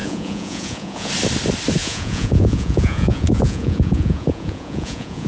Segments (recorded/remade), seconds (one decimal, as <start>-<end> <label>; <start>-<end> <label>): 0.0-1.1 remade; 1.1-1.8 recorded; 1.8-5.3 remade